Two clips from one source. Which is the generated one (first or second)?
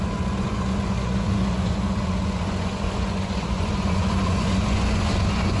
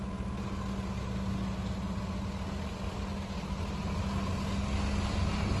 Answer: first